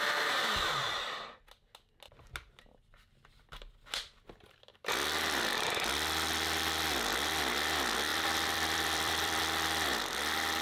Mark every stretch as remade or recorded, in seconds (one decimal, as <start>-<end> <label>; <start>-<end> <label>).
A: 0.0-8.1 recorded; 8.1-9.4 remade; 9.4-10.6 recorded